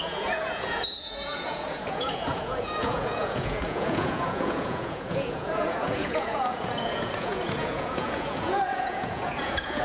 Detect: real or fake fake